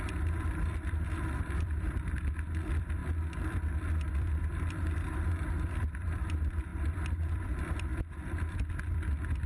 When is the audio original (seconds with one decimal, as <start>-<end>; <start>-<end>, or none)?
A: 3.0-4.1